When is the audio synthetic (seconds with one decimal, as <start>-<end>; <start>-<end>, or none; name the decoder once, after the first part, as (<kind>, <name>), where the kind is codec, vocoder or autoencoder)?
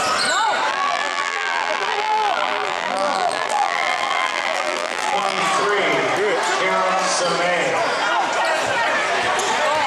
0.7-5.4 (vocoder, BigVGAN v2)